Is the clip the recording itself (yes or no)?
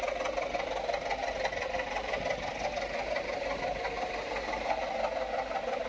yes